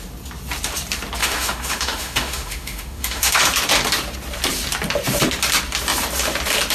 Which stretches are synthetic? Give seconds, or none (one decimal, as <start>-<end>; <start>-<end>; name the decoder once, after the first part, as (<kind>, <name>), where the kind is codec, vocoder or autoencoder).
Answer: 1.2-3.4 (autoencoder, DAC-VAE)